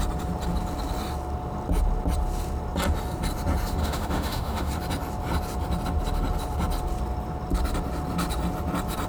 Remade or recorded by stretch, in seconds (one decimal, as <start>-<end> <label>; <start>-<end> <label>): 0.0-3.8 recorded; 3.8-4.7 remade; 4.7-9.1 recorded